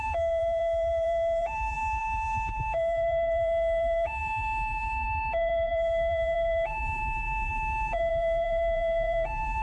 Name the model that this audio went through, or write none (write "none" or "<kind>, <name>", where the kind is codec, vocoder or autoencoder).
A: vocoder, BigVGAN v2